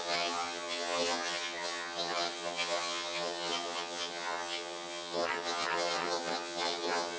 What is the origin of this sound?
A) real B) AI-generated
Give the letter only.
B